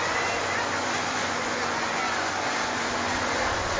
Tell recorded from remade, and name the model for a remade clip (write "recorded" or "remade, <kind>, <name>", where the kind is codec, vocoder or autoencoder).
remade, vocoder, Vocos